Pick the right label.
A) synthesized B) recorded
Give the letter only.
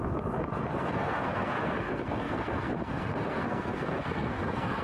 A